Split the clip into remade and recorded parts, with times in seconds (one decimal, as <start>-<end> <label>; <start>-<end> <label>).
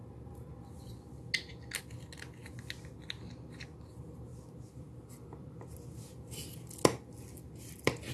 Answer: 0.0-8.1 recorded